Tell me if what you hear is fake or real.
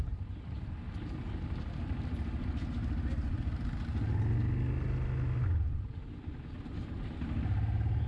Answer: real